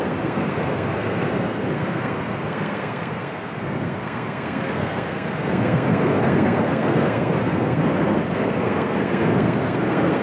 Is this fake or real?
fake